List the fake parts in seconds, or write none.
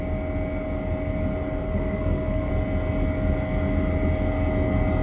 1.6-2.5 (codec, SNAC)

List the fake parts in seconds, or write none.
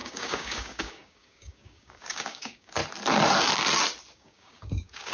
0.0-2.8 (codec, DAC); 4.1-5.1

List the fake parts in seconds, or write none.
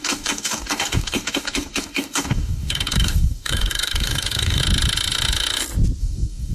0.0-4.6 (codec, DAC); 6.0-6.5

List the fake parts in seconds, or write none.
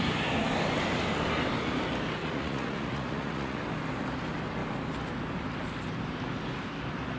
2.2-3.6 (vocoder, Vocos)